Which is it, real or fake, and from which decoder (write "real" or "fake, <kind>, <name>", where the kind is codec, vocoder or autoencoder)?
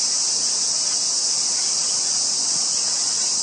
real